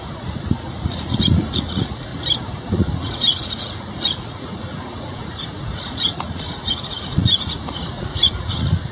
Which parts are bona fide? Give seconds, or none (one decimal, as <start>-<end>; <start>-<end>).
2.1-2.7